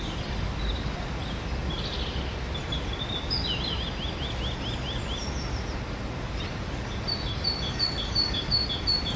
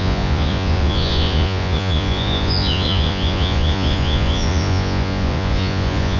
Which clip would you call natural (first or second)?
first